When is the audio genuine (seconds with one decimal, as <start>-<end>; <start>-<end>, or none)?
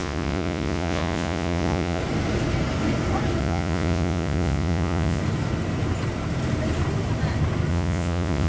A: 2.0-3.4; 5.2-7.7